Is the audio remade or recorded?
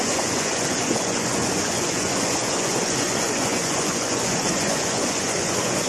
remade